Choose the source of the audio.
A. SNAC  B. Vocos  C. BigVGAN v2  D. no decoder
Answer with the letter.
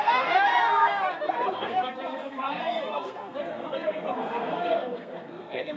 A